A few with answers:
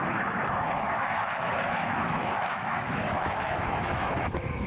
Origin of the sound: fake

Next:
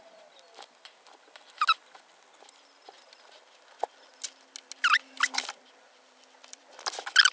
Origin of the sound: real